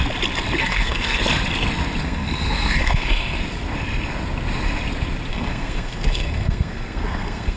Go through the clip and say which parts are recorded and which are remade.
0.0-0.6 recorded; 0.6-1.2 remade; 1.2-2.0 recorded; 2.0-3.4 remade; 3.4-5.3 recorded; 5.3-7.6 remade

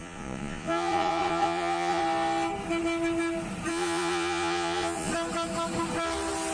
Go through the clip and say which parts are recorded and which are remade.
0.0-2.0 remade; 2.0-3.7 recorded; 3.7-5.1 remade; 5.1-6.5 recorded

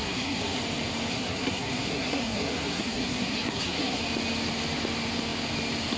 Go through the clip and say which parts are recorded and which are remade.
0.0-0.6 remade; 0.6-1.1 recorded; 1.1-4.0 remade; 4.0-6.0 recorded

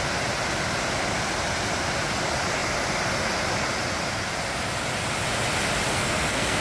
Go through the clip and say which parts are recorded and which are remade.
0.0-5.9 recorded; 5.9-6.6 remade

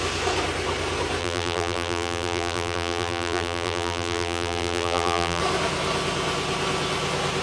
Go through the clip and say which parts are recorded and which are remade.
0.0-1.2 recorded; 1.2-5.4 remade; 5.4-7.4 recorded

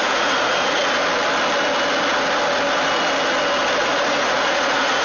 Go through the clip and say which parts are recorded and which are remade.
0.0-0.8 remade; 0.8-3.8 recorded; 3.8-5.0 remade